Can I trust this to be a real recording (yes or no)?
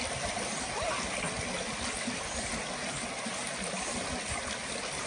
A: yes